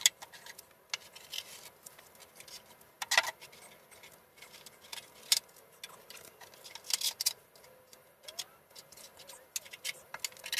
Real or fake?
real